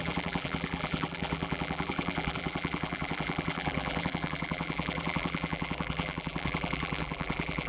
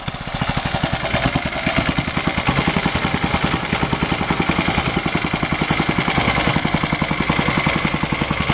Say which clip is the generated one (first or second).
first